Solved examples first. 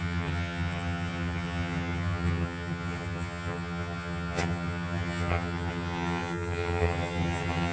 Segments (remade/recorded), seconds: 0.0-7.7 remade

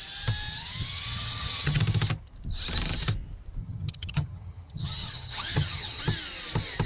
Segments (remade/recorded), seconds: 0.0-0.5 recorded; 0.5-1.8 remade; 1.8-3.6 recorded; 3.6-6.0 remade; 6.0-6.9 recorded

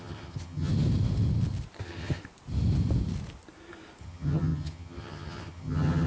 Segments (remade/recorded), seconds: 0.0-0.7 remade; 0.7-1.8 recorded; 1.8-2.2 remade; 2.2-4.0 recorded; 4.0-6.1 remade

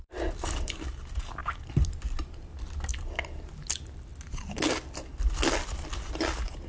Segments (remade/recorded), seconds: 0.0-6.7 recorded

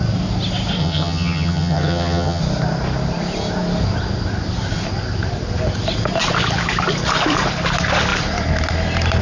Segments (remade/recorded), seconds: 0.0-0.8 recorded; 0.8-2.4 remade; 2.4-9.2 recorded

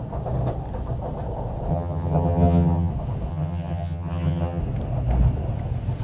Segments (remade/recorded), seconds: 0.0-1.7 recorded; 1.7-2.9 remade; 2.9-3.3 recorded; 3.3-4.6 remade; 4.6-6.0 recorded

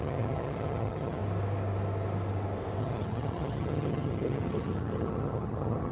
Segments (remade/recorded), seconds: 0.0-1.2 remade; 1.2-2.8 recorded; 2.8-5.9 remade